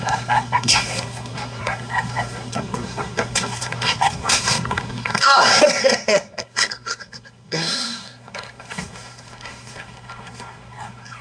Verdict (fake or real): fake